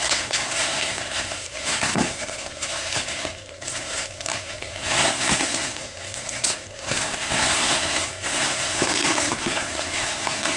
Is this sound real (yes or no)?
no